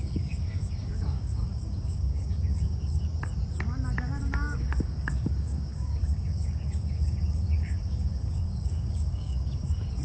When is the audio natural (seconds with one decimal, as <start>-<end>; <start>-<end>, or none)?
3.1-4.2